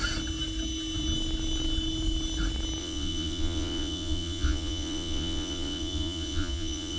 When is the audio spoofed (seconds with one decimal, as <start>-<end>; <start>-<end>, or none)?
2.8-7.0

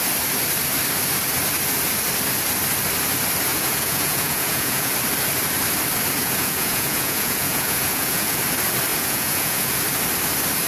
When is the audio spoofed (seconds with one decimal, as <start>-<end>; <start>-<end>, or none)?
3.5-4.9; 6.2-8.4; 8.9-9.8

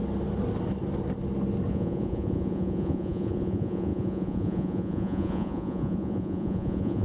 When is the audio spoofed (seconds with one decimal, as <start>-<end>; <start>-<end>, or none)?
1.7-7.0